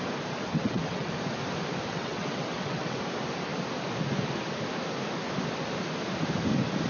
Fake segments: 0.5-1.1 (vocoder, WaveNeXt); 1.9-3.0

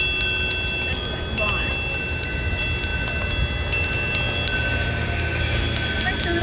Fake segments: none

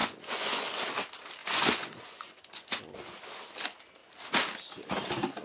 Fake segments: 0.0-0.8 (vocoder, Vocos); 1.4-2.8